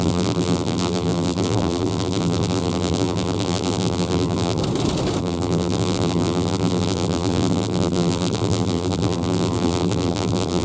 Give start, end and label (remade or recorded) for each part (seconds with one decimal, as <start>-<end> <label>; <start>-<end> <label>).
0.0-4.6 remade; 4.6-5.2 recorded; 5.2-10.6 remade